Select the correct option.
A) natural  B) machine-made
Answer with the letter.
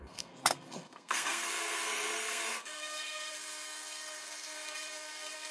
B